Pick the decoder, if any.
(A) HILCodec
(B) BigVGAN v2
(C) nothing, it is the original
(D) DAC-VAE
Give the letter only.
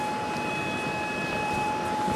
B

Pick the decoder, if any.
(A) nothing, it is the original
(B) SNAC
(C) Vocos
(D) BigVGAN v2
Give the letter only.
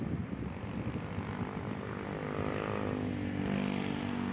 A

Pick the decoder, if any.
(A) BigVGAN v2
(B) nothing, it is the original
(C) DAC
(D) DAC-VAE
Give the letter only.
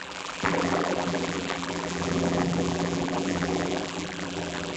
A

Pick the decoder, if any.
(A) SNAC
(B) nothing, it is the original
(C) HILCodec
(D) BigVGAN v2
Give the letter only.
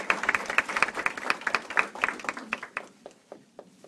D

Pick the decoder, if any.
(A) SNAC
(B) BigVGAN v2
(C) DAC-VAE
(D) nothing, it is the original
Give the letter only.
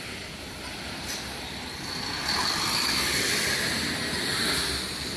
B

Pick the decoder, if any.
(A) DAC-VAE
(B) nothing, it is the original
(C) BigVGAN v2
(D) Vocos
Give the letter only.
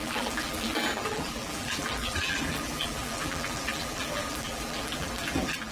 C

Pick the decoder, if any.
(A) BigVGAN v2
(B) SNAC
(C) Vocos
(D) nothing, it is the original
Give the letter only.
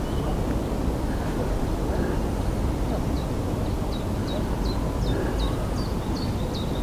D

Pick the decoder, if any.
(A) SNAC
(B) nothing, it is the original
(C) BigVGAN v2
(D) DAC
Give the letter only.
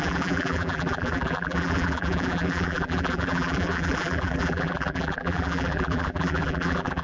C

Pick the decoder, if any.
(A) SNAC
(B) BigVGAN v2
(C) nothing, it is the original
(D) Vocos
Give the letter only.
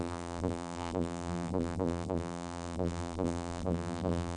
B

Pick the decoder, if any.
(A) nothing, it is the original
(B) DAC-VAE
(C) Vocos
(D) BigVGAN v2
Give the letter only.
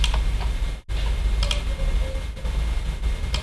A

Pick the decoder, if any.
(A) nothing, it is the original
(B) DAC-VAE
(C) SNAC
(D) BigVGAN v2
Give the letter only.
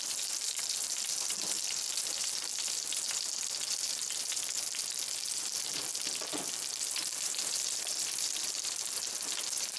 D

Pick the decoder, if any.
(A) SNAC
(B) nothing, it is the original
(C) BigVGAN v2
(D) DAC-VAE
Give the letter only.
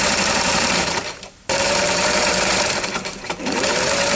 C